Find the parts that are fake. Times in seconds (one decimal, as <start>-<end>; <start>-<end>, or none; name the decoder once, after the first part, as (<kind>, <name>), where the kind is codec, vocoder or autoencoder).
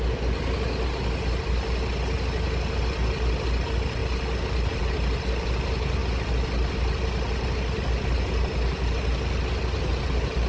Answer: none